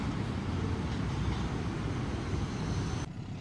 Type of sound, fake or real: real